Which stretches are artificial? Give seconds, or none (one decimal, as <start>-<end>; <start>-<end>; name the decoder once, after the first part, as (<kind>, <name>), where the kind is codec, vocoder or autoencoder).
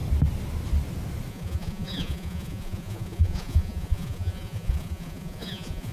1.3-5.9 (vocoder, Vocos)